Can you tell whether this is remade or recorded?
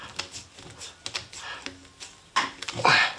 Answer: recorded